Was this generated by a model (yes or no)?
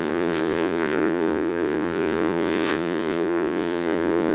yes